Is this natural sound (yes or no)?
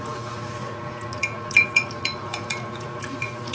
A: no